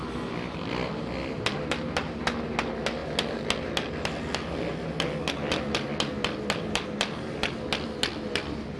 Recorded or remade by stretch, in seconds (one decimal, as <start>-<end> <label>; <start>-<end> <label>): 0.0-8.8 recorded